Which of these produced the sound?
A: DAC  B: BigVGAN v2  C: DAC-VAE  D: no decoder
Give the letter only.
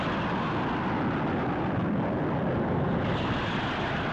D